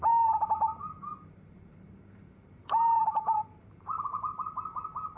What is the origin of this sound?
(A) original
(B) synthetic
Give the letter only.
B